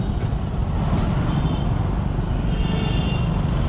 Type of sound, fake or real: real